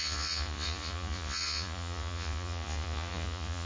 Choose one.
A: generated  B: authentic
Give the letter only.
A